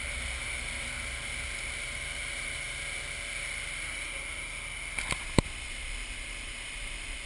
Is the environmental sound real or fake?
real